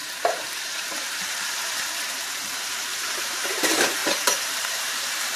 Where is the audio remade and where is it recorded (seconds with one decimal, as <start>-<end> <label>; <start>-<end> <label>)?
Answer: 0.0-5.4 remade